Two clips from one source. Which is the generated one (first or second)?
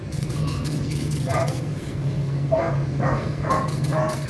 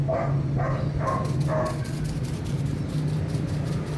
first